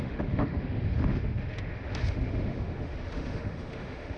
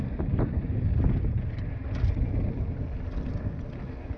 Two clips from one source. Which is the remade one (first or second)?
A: first